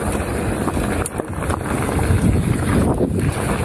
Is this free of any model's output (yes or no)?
yes